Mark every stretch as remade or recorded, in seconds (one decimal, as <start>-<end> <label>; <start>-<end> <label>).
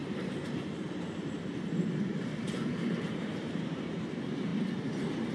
0.0-1.3 remade; 1.3-2.1 recorded; 2.1-3.9 remade; 3.9-5.3 recorded